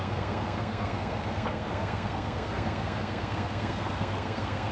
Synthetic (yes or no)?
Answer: yes